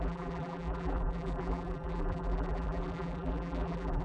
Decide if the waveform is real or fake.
fake